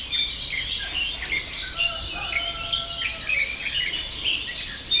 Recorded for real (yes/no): yes